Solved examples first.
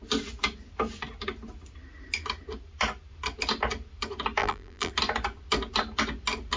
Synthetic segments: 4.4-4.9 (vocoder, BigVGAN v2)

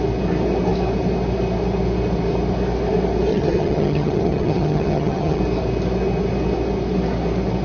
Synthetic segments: 3.3-5.4 (vocoder, HiFi-GAN)

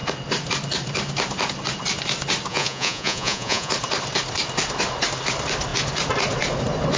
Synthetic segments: 2.5-3.7 (vocoder, Vocos)

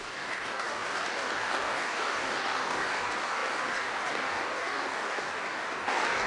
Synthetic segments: 0.0-6.3 (codec, DAC)

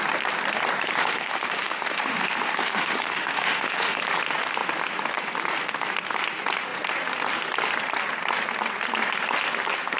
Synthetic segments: 1.0-4.0 (autoencoder, DAC-VAE)